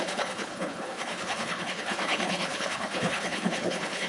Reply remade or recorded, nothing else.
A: remade